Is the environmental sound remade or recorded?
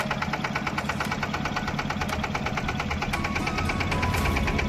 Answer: recorded